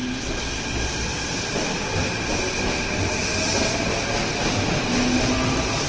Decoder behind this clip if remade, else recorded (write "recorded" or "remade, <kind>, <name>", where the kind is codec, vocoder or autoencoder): recorded